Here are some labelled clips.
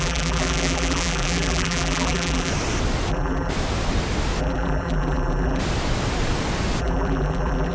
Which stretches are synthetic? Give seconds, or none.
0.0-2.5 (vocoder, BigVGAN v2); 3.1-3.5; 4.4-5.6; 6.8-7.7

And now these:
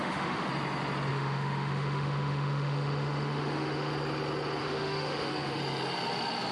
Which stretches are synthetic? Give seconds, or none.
0.0-0.5 (autoencoder, DAC-VAE); 1.1-3.9; 4.6-5.6

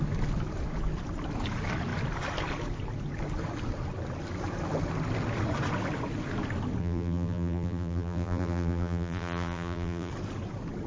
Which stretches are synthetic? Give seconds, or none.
6.8-10.1 (vocoder, BigVGAN v2)

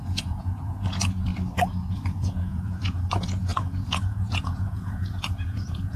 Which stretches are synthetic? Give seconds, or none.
0.0-1.3 (vocoder, Vocos); 1.9-6.0